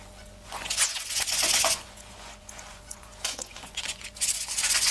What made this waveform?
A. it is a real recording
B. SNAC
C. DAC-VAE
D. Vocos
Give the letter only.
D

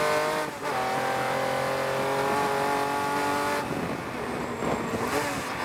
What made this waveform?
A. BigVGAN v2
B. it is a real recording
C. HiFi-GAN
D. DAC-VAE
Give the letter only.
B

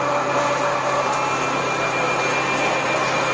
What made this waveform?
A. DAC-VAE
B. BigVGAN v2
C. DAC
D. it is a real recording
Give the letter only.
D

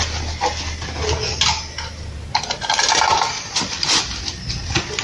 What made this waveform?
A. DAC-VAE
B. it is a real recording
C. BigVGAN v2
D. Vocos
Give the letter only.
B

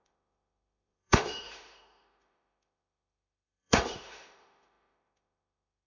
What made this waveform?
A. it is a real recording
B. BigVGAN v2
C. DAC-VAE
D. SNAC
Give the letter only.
C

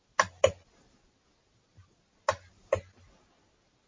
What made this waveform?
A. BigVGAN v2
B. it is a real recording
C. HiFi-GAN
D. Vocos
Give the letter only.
B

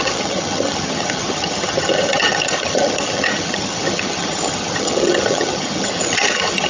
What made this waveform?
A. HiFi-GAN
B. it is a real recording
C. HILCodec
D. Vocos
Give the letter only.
A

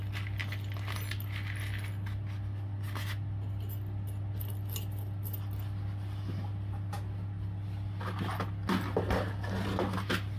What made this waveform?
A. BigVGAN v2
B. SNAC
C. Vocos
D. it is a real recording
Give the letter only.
D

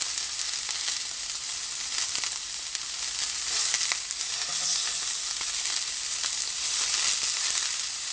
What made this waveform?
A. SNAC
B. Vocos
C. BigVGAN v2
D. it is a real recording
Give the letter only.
D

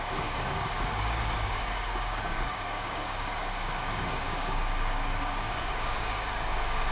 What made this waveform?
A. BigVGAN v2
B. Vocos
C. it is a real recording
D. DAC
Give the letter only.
D